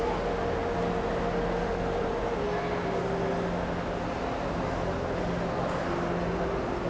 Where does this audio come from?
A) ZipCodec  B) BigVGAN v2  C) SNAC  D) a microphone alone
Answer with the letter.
D